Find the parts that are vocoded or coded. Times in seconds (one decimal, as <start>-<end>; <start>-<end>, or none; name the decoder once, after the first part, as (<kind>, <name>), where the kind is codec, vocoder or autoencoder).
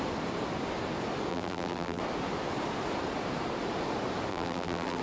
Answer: 1.3-2.0 (vocoder, BigVGAN v2); 4.3-5.0